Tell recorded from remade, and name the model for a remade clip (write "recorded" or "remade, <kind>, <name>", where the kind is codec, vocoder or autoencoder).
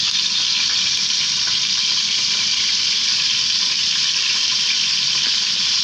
recorded